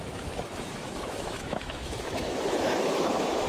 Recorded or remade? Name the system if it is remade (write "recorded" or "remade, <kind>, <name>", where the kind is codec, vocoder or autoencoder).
remade, autoencoder, DAC-VAE